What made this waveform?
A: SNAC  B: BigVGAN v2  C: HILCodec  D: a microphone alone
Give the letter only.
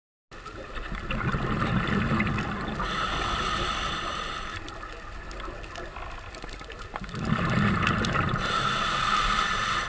D